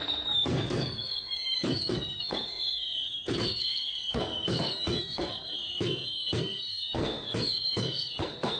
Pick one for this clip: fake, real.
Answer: fake